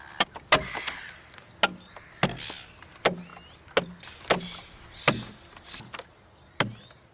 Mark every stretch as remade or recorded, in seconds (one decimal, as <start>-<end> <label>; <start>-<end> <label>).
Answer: 0.0-7.1 recorded